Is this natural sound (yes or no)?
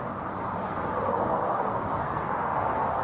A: no